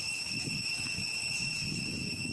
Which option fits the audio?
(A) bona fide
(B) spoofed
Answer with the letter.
B